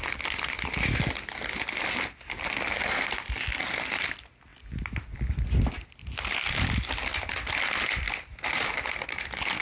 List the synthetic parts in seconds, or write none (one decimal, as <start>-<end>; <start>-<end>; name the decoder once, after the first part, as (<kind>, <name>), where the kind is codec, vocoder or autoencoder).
none